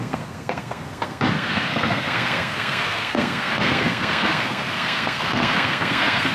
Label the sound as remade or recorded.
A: remade